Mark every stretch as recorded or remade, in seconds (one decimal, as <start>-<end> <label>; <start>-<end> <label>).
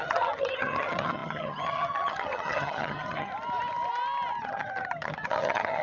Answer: 0.0-3.3 remade; 3.3-4.4 recorded; 4.4-5.8 remade